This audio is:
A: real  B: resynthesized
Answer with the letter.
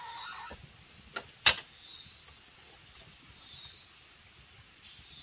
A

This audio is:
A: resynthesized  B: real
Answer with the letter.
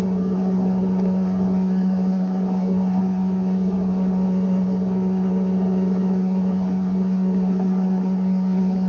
A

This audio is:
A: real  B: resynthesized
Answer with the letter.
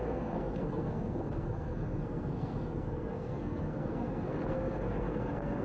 B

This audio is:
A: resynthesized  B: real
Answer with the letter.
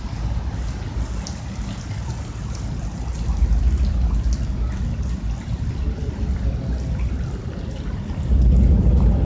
B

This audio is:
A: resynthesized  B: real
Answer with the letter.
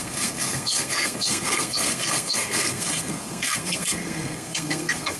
A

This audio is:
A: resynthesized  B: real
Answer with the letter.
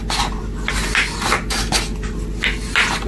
B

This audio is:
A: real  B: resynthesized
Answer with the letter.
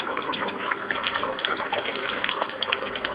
B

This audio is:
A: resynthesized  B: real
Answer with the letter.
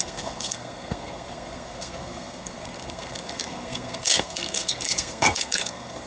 A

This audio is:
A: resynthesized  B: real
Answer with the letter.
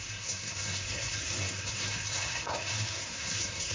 A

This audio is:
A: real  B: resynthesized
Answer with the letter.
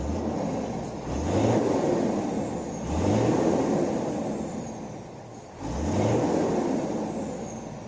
A